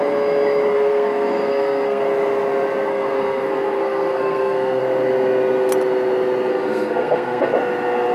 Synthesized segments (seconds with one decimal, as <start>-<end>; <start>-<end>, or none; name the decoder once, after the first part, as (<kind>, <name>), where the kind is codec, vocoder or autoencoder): 0.7-2.0 (codec, SNAC); 2.9-4.8; 6.5-7.5